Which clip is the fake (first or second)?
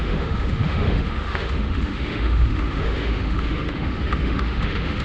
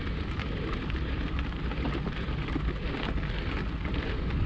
first